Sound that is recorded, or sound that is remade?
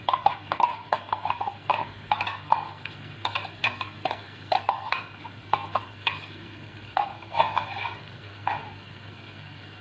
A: remade